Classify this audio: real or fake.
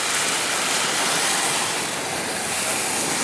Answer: real